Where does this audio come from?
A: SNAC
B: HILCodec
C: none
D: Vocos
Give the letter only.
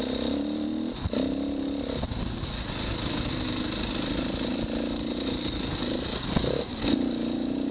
C